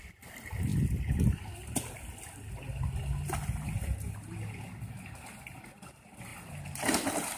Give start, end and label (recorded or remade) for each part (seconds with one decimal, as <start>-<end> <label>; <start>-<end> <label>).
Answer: 0.0-6.3 recorded; 6.3-7.4 remade